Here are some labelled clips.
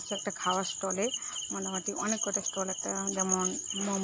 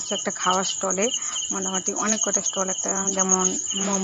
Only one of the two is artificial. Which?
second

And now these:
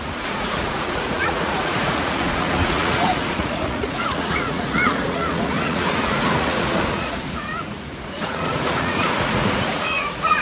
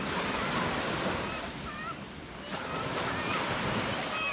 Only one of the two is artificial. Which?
first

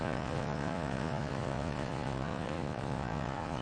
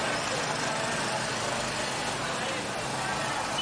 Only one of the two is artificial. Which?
first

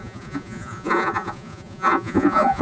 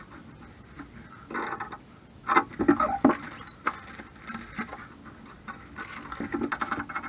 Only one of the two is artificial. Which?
first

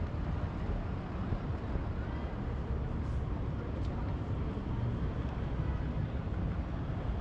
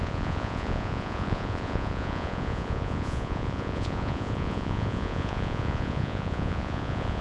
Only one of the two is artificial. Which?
second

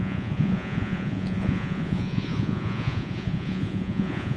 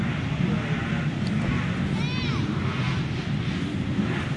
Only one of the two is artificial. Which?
first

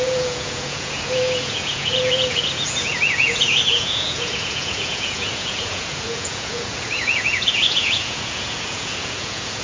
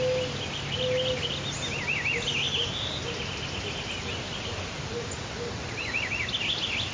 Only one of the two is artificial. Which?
first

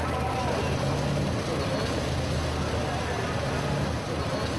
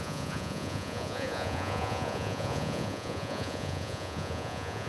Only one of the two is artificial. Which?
second